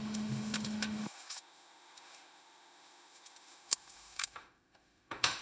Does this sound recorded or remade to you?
remade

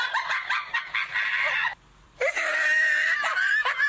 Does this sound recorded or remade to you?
remade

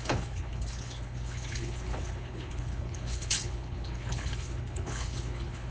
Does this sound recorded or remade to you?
remade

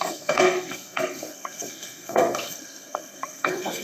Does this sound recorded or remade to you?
remade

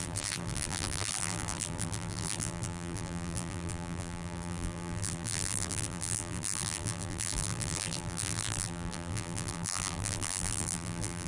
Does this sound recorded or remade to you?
remade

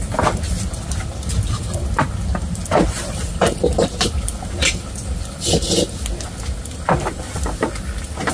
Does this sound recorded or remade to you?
recorded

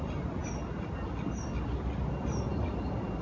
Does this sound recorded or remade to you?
recorded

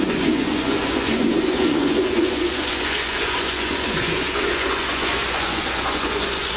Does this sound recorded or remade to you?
remade